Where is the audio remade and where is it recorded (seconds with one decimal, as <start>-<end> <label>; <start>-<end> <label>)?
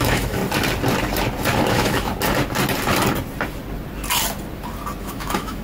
0.0-0.4 remade; 0.4-1.7 recorded; 1.7-2.1 remade; 2.1-5.0 recorded; 5.0-5.6 remade